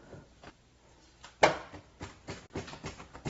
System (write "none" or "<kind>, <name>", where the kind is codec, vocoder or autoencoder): none